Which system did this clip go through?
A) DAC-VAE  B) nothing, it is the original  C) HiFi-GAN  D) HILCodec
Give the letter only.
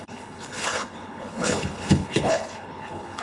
D